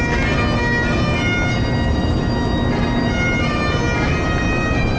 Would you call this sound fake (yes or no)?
no